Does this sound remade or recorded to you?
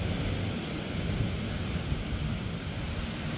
recorded